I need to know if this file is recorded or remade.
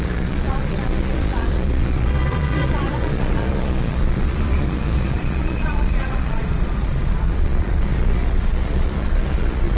remade